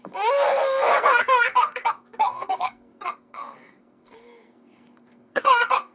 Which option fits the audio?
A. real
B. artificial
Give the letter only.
B